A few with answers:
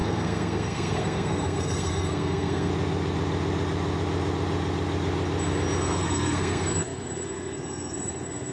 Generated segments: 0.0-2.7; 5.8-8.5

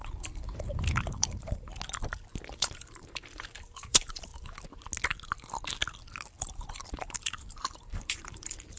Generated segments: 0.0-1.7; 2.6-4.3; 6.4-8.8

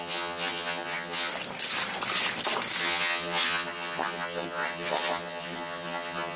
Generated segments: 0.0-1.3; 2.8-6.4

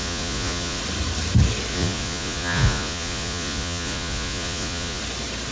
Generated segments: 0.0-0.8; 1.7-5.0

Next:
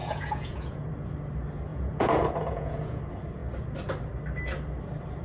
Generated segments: 0.0-0.9; 1.7-3.0